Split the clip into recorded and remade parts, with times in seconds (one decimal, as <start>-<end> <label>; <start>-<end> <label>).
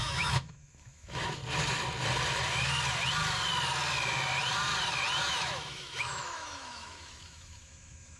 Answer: 0.0-1.4 remade; 1.4-5.2 recorded; 5.2-8.2 remade